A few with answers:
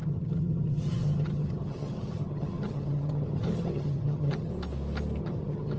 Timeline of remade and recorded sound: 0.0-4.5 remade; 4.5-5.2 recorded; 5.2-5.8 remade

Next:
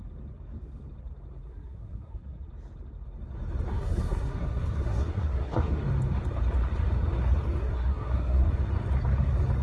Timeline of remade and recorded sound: 0.0-1.5 recorded; 1.5-2.5 remade; 2.5-3.7 recorded; 3.7-5.8 remade; 5.8-7.6 recorded; 7.6-8.5 remade; 8.5-9.6 recorded

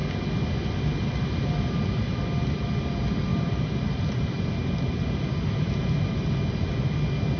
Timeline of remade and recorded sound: 0.0-3.3 recorded; 3.3-5.7 remade; 5.7-7.4 recorded

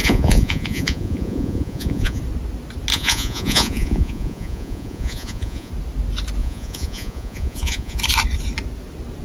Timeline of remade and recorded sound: 0.0-2.2 remade; 2.2-2.9 recorded; 2.9-5.7 remade; 5.7-6.4 recorded; 6.4-8.0 remade; 8.0-9.2 recorded

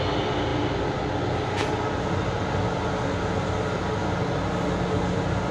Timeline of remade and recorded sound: 0.0-5.5 recorded